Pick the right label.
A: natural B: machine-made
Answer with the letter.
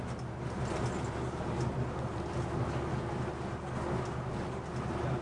A